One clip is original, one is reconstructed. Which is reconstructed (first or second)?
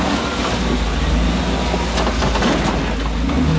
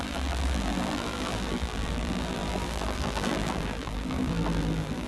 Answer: second